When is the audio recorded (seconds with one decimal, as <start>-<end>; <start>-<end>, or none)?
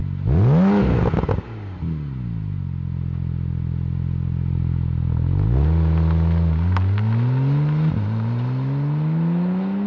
0.0-9.9